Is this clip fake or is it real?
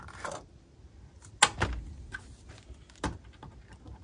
real